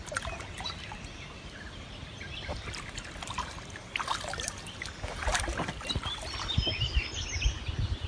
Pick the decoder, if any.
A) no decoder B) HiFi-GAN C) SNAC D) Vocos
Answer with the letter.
A